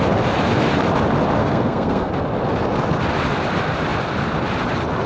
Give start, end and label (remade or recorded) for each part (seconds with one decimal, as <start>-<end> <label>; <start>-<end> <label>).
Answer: 0.0-1.4 recorded; 1.4-2.1 remade; 2.1-5.1 recorded